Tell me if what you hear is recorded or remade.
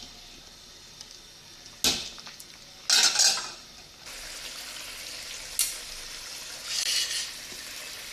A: recorded